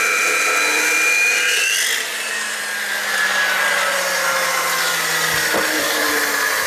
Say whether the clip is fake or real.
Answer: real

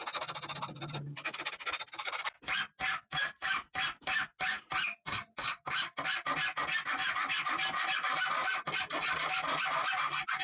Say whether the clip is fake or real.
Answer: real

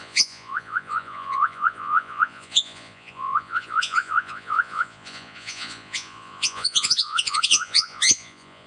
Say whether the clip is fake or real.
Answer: fake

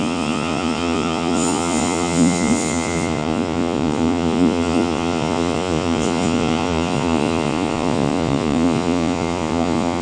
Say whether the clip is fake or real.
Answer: fake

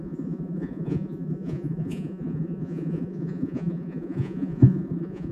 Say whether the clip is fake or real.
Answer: fake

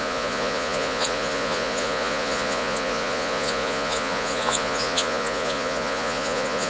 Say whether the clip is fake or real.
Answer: fake